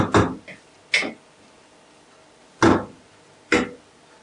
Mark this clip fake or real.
real